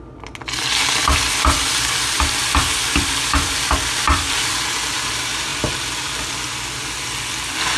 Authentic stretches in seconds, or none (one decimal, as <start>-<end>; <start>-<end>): 0.0-1.0; 4.5-7.8

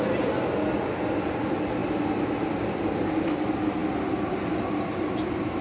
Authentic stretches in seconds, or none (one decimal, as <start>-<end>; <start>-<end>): 0.0-5.6